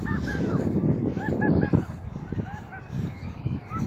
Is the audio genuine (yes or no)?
no